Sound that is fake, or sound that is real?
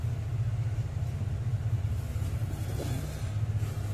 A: real